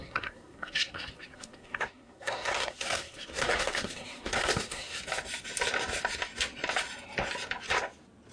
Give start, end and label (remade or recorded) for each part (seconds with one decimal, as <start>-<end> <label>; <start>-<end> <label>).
0.0-5.0 remade; 5.0-8.3 recorded